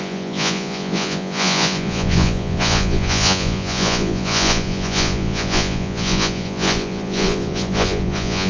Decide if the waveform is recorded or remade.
remade